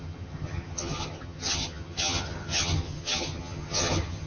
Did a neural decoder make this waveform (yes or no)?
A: yes